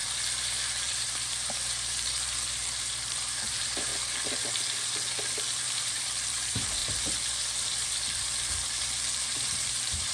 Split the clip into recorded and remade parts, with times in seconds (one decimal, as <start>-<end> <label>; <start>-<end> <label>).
0.0-3.9 remade; 3.9-5.3 recorded; 5.3-6.8 remade; 6.8-8.8 recorded; 8.8-10.1 remade